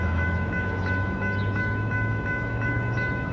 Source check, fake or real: fake